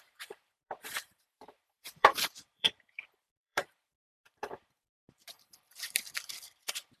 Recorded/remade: remade